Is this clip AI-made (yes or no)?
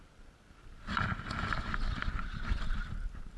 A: no